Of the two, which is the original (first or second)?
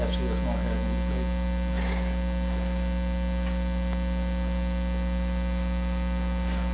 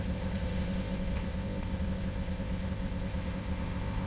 first